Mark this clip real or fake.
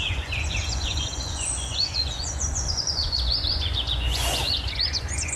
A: fake